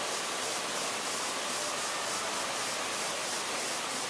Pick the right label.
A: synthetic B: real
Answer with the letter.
B